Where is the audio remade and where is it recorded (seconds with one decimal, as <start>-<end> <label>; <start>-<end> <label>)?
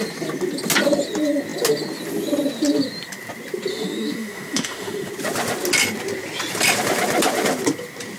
0.0-3.7 recorded; 3.7-5.1 remade; 5.1-8.2 recorded